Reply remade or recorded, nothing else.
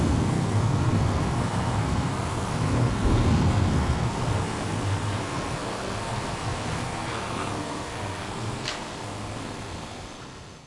remade